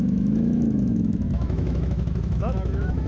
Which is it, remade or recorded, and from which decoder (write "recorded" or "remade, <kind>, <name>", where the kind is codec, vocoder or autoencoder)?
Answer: remade, autoencoder, DAC-VAE